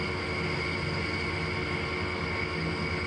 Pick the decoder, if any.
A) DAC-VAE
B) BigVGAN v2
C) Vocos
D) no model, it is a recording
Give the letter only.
D